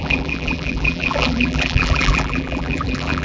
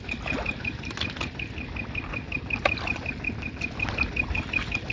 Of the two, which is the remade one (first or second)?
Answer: first